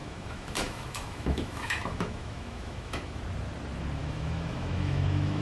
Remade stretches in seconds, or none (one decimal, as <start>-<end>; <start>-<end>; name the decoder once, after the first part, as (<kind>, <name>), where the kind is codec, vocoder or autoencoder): 0.0-3.2 (autoencoder, DAC-VAE); 4.0-5.4